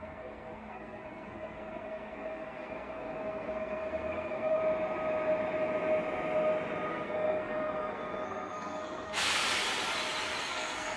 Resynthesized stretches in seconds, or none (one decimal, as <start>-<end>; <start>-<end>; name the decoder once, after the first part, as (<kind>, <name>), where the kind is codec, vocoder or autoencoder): 0.0-4.6 (codec, SNAC); 6.9-9.4; 10.4-11.0